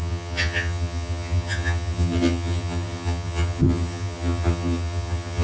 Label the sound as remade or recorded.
remade